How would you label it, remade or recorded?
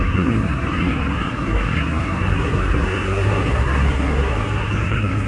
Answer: remade